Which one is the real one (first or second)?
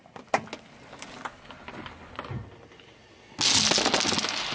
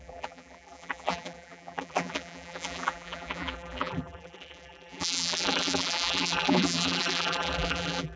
first